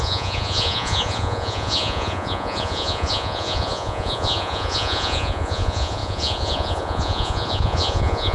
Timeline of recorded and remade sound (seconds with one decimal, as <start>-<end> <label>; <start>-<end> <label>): 0.0-8.3 remade

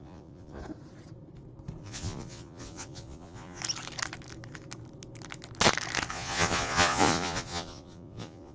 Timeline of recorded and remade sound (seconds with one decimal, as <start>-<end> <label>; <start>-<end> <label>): 0.0-0.6 remade; 0.6-1.8 recorded; 1.8-3.6 remade; 3.6-6.1 recorded; 6.1-8.5 remade

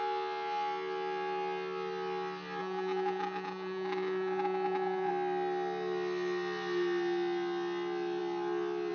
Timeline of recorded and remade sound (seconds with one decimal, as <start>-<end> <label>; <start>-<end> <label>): 0.0-2.6 recorded; 2.6-5.1 remade; 5.1-8.9 recorded

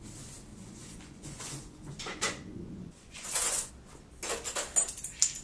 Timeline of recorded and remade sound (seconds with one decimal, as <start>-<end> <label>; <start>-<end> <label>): 0.0-0.5 recorded; 0.5-3.7 remade; 3.7-5.4 recorded

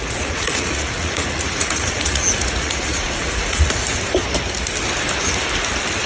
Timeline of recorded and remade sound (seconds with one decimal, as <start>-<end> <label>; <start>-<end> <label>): 0.0-3.7 remade; 3.7-6.1 recorded

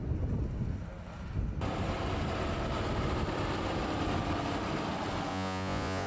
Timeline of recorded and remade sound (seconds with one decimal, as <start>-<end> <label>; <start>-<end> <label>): 0.0-5.3 recorded; 5.3-6.1 remade

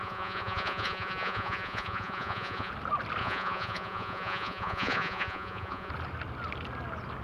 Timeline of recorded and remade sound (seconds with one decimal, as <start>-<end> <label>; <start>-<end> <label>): 0.0-2.7 remade; 2.7-3.2 recorded; 3.2-5.9 remade; 5.9-7.2 recorded

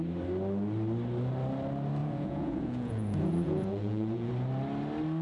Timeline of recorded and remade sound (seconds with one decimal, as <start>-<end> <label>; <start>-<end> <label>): 0.0-2.0 recorded; 2.0-4.3 remade; 4.3-5.2 recorded